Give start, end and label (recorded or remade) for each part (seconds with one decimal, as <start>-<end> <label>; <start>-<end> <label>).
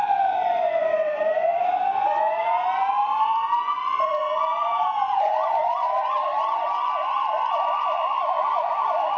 0.0-9.2 remade